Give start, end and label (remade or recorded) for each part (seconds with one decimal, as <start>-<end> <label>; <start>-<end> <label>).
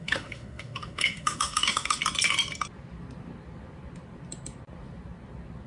0.0-2.0 remade; 2.0-5.7 recorded